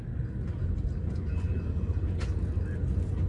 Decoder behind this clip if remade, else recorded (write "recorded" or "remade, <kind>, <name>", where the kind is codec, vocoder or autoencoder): recorded